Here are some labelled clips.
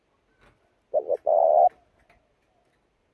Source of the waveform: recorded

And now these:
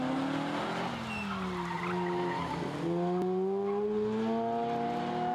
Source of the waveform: recorded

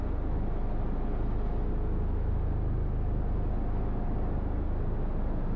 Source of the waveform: recorded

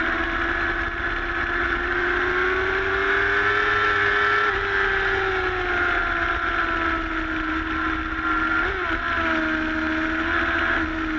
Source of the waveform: recorded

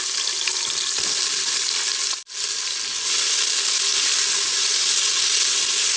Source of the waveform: recorded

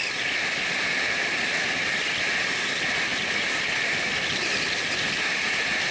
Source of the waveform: recorded